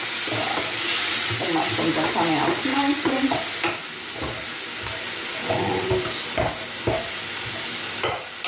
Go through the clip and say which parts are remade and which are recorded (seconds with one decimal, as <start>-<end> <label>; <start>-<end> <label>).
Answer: 0.0-1.0 recorded; 1.0-1.7 remade; 1.7-2.7 recorded; 2.7-3.4 remade; 3.4-5.4 recorded; 5.4-5.9 remade; 5.9-8.5 recorded

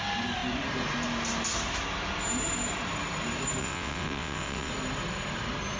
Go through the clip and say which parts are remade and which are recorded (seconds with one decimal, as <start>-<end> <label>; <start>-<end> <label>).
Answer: 0.0-3.6 recorded; 3.6-4.7 remade; 4.7-5.8 recorded

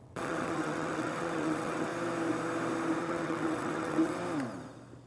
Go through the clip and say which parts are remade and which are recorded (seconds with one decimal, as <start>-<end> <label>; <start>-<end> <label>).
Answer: 0.0-1.9 remade; 1.9-3.0 recorded; 3.0-4.2 remade; 4.2-5.1 recorded

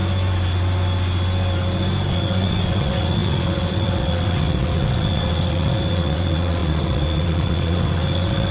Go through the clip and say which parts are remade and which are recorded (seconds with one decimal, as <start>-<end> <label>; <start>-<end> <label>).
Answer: 0.0-2.1 recorded; 2.1-8.5 remade

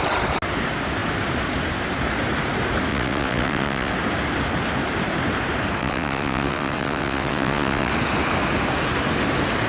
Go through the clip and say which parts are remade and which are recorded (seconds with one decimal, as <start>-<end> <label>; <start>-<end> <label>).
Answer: 0.0-2.9 recorded; 2.9-3.9 remade; 3.9-5.8 recorded; 5.8-7.9 remade; 7.9-9.7 recorded